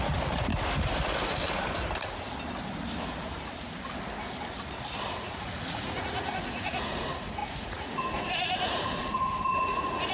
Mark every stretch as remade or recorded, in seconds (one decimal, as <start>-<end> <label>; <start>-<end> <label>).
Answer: 0.0-0.5 remade; 0.5-5.2 recorded; 5.2-10.1 remade